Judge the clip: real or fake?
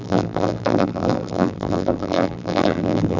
fake